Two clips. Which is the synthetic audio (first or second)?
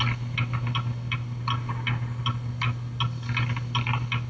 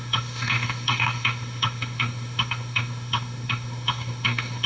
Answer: second